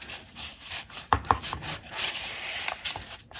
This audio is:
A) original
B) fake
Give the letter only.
B